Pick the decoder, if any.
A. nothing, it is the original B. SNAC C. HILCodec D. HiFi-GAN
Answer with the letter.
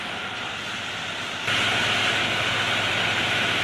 A